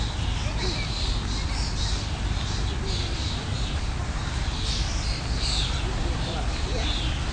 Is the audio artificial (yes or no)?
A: no